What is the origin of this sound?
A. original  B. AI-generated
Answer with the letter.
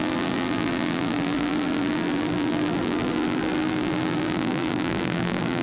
B